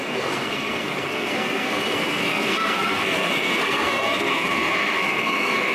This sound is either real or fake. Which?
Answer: fake